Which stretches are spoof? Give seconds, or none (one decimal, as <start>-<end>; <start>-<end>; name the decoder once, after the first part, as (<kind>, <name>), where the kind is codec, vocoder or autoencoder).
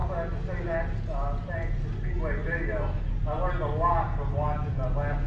none